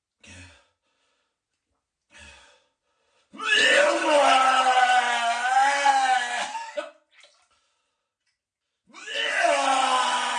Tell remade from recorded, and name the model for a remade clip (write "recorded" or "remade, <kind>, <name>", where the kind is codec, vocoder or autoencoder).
recorded